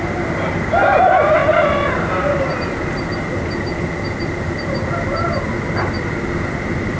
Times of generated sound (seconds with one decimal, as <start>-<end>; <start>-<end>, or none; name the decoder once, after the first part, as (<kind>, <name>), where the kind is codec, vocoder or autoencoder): none